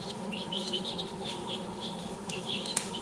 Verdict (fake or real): fake